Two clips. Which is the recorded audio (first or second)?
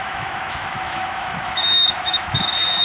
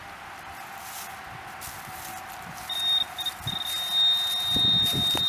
second